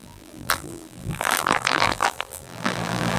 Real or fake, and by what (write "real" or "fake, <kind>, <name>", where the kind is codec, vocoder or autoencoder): fake, vocoder, BigVGAN v2